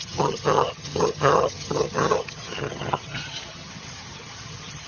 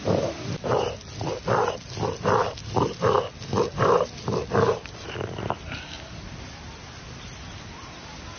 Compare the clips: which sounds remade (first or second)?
first